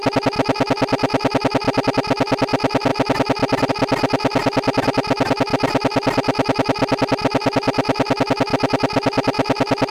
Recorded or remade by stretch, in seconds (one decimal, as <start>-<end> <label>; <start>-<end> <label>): 0.0-9.9 recorded